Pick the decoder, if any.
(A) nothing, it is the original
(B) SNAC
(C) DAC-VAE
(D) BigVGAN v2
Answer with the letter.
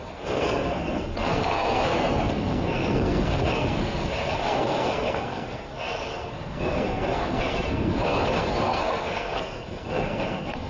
B